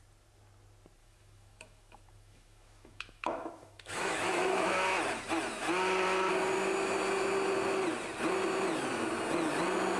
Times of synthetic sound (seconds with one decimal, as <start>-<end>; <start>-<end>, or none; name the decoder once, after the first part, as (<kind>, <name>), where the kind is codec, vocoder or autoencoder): 1.0-4.7 (autoencoder, DAC-VAE)